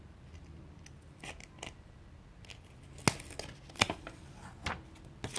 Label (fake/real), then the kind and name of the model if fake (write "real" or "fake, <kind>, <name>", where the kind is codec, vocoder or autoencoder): real